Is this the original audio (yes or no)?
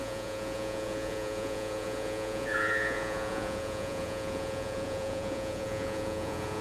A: no